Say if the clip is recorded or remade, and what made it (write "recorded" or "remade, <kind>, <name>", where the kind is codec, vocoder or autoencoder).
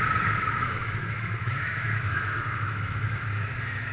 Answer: remade, autoencoder, DAC-VAE